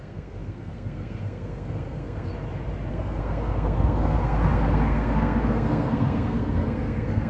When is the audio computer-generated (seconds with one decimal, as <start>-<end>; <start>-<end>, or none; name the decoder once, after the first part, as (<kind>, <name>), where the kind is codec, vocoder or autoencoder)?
0.0-2.3 (codec, SNAC); 2.9-7.3